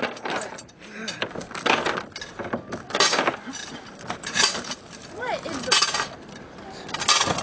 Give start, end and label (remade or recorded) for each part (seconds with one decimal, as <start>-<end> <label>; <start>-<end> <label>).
0.0-3.6 recorded; 3.6-5.7 remade; 5.7-7.4 recorded